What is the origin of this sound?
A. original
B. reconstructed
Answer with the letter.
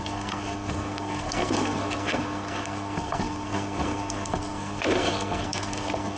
B